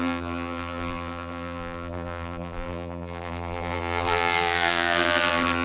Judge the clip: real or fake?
fake